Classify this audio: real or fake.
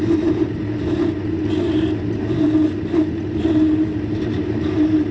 fake